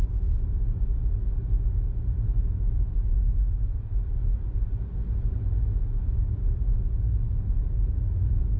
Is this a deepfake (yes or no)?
no